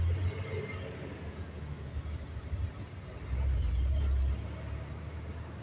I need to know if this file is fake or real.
real